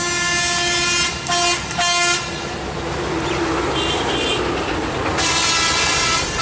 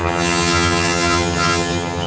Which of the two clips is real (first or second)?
first